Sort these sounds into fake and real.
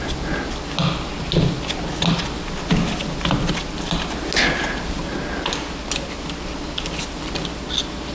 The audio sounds real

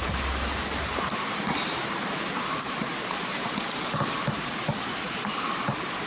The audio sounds fake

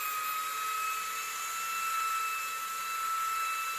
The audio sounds real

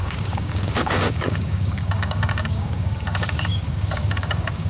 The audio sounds fake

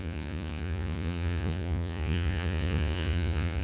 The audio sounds fake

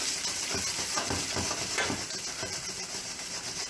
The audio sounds real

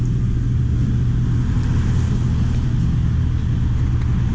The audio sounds real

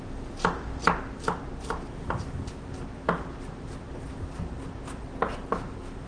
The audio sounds real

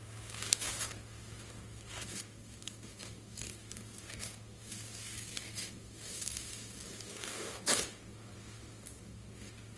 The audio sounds fake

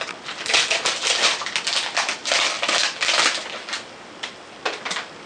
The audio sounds real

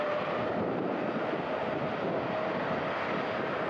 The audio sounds real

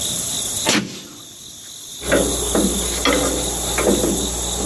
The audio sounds real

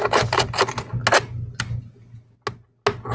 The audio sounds real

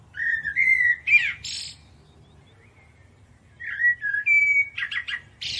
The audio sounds real